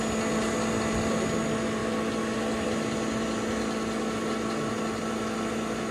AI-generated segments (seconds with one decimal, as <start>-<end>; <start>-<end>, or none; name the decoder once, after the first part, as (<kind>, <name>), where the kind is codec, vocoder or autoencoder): none